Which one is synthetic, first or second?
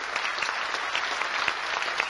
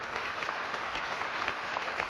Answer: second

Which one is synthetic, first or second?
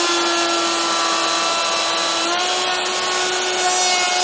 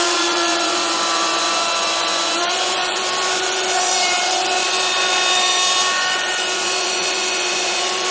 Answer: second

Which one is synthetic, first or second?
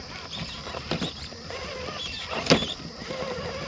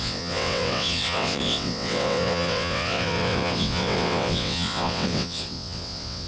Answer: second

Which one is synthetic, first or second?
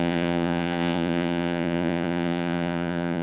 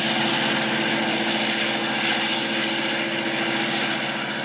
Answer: first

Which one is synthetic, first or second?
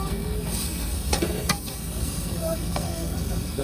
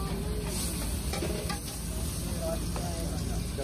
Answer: first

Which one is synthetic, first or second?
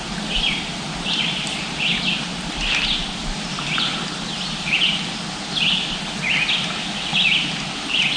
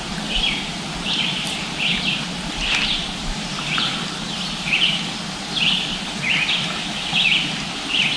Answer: second